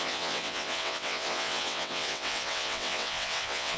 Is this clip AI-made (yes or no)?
yes